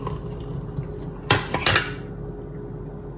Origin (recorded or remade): recorded